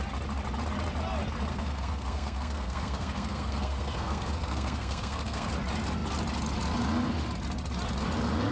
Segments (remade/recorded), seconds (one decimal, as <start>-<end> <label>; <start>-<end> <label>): 0.0-1.5 recorded; 1.5-5.5 remade; 5.5-8.5 recorded